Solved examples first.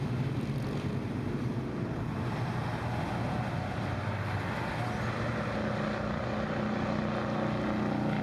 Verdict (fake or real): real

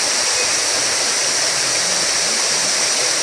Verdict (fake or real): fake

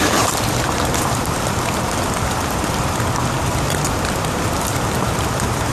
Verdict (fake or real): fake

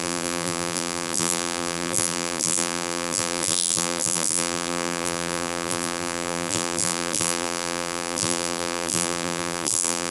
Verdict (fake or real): fake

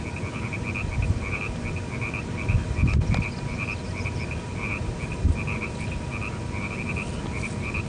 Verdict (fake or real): real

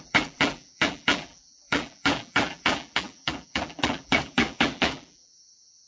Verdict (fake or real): fake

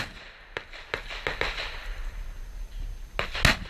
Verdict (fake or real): real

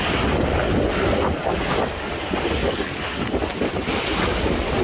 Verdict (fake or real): real